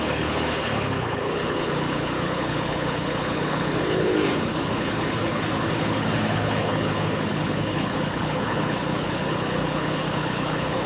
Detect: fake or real fake